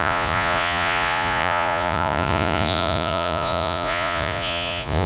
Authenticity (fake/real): fake